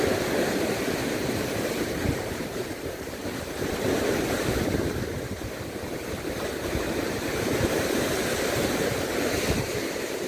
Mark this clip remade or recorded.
remade